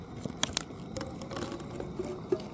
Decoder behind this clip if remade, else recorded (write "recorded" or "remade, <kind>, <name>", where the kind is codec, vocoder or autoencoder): recorded